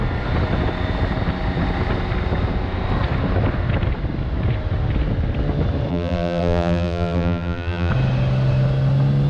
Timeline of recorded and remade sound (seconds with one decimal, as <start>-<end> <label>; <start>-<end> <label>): 0.0-5.9 recorded; 5.9-7.9 remade; 7.9-9.3 recorded